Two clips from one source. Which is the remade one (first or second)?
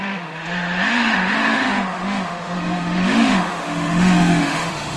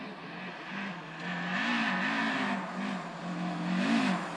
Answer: first